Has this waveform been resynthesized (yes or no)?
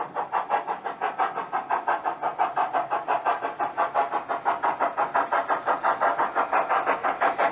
no